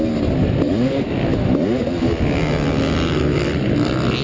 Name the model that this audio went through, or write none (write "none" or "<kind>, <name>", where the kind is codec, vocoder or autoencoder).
none